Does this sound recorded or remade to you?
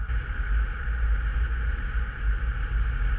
recorded